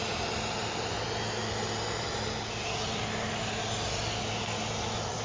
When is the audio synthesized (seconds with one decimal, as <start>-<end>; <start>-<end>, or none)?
none